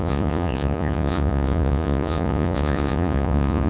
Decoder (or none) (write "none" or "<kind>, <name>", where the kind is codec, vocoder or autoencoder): vocoder, Vocos